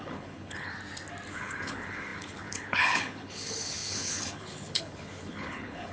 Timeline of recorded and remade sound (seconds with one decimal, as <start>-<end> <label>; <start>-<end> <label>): 0.0-0.7 remade; 0.7-1.3 recorded; 1.3-5.9 remade